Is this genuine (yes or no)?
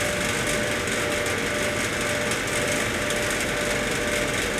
yes